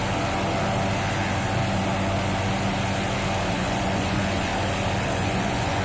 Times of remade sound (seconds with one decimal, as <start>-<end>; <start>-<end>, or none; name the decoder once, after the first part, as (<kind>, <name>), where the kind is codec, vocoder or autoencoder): 3.5-4.5 (vocoder, Vocos); 5.1-5.8